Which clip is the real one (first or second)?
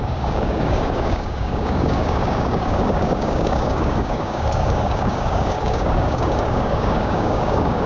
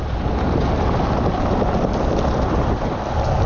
second